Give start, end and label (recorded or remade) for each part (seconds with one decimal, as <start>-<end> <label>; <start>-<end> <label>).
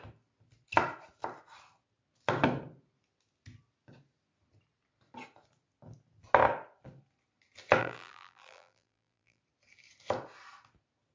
0.0-7.8 recorded; 7.8-9.4 remade; 9.4-11.1 recorded